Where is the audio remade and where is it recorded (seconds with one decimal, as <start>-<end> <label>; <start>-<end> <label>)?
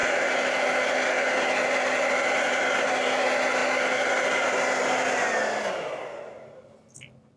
0.0-7.4 recorded